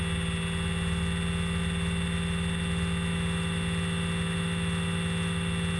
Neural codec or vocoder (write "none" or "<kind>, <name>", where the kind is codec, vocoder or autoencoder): none